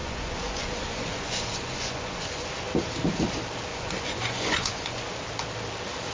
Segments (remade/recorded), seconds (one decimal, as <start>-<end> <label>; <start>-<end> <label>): 0.0-2.5 remade; 2.5-3.7 recorded; 3.7-5.1 remade; 5.1-6.1 recorded